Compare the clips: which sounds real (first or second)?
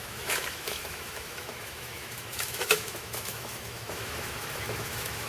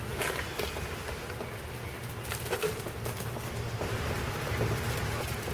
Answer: second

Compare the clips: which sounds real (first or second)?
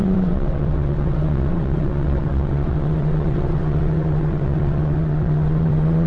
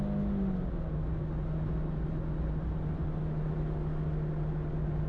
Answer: second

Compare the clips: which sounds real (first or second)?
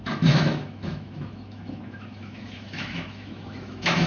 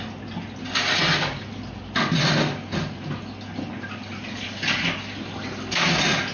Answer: second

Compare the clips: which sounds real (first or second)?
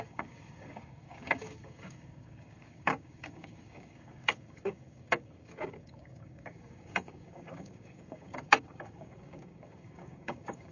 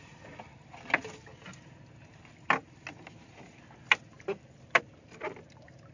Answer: second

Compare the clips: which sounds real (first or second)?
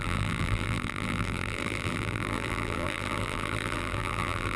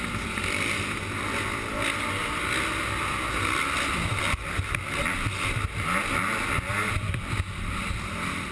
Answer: second